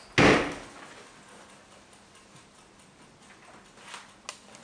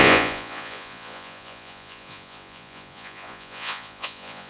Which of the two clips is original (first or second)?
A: first